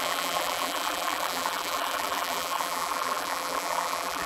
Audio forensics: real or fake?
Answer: fake